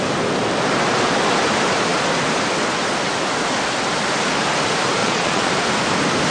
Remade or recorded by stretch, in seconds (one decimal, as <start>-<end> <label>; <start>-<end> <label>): 0.0-5.0 recorded; 5.0-5.5 remade; 5.5-6.3 recorded